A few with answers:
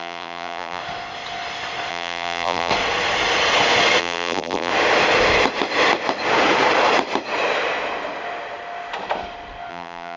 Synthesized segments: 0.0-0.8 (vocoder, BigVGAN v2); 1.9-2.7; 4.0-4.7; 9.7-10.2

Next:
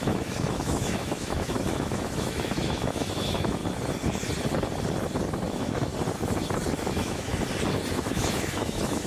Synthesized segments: 0.0-3.6 (autoencoder, DAC-VAE); 5.5-5.9; 6.8-7.3; 7.9-9.1

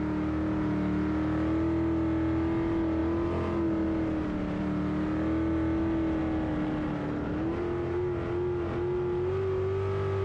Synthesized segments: none

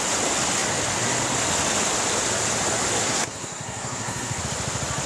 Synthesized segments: 3.0-4.4 (codec, SNAC)

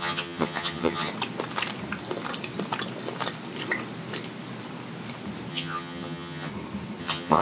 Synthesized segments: 0.0-1.1 (vocoder, HiFi-GAN); 5.5-6.5; 7.0-7.4

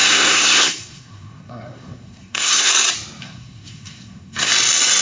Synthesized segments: 0.0-2.7 (codec, SNAC); 3.2-4.5

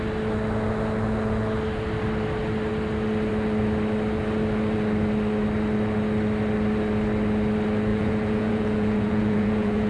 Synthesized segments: 7.9-9.9 (vocoder, Vocos)

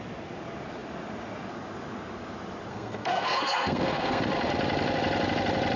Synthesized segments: 2.7-4.2 (codec, SNAC)